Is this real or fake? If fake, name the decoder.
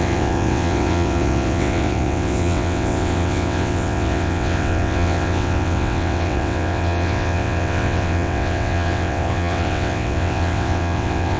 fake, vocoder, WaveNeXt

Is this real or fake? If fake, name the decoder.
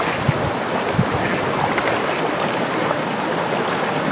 real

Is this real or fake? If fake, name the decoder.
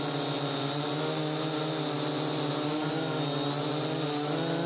real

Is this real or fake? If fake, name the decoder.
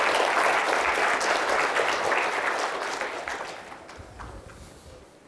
real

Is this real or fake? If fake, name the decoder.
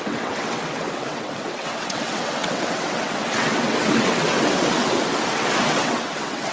fake, vocoder, WaveNeXt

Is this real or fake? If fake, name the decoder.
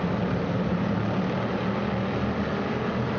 real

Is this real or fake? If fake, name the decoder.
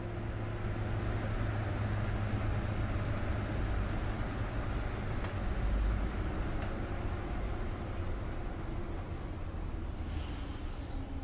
real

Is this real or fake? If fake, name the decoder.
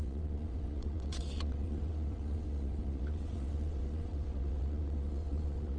fake, vocoder, WaveNeXt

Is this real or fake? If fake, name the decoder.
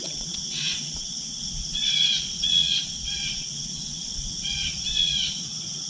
fake, vocoder, WaveNeXt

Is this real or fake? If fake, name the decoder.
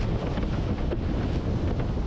real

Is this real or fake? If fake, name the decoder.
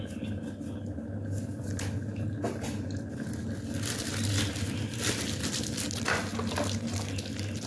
real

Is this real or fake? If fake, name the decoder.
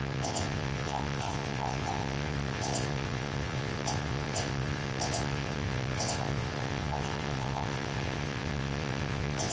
fake, vocoder, WaveNeXt